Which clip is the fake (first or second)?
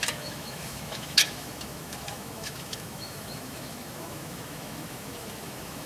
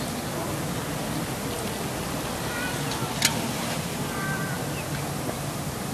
first